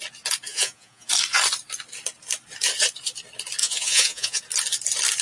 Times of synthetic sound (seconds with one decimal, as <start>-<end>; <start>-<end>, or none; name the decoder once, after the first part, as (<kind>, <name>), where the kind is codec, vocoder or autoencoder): 0.5-1.1 (vocoder, Vocos); 3.6-4.4